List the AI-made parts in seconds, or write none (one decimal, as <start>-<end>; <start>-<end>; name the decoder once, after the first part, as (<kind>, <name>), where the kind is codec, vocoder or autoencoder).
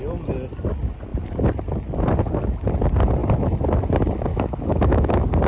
4.3-5.1 (autoencoder, DAC-VAE)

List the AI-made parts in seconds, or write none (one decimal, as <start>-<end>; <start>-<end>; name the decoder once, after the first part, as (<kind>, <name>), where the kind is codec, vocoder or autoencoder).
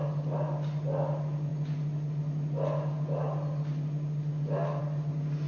none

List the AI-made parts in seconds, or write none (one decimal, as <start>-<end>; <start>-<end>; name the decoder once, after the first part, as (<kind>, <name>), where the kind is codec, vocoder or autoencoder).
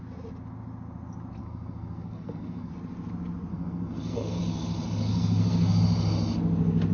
1.4-2.7 (codec, SNAC); 3.5-4.4; 5.1-5.8